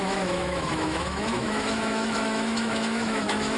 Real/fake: fake